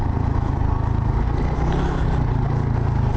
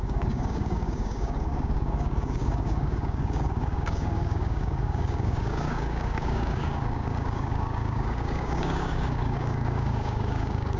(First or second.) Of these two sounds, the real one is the first